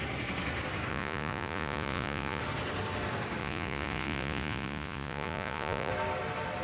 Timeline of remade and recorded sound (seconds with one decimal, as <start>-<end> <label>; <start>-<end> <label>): 0.0-0.9 recorded; 0.9-2.4 remade; 2.4-3.4 recorded; 3.4-5.9 remade; 5.9-6.6 recorded